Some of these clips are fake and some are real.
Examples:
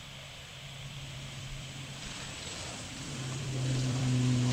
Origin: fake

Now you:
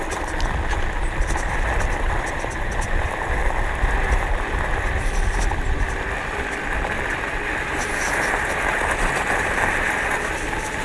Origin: real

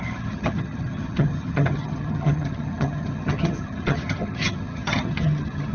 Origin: fake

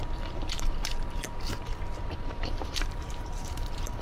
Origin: fake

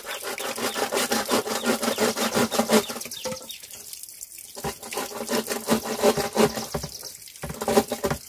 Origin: real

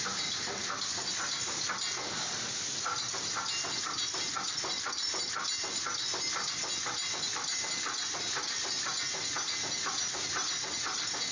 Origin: real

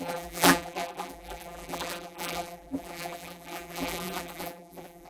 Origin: fake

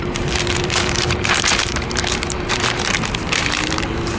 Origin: fake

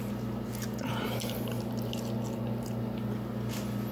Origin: real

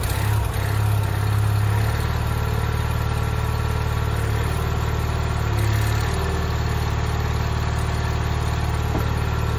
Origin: real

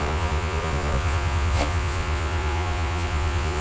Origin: fake